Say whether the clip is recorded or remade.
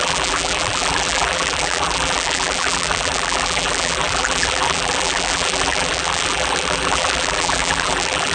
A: remade